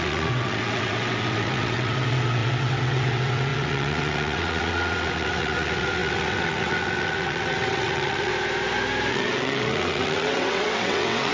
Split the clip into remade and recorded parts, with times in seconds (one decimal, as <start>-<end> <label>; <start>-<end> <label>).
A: 0.0-8.3 remade; 8.3-9.1 recorded; 9.1-11.3 remade